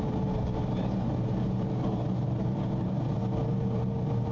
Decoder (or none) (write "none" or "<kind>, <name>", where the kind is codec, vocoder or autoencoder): vocoder, BigVGAN v2